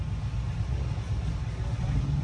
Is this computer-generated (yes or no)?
no